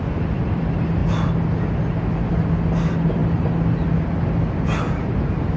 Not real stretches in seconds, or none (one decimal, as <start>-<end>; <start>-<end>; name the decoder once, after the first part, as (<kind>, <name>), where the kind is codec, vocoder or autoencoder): none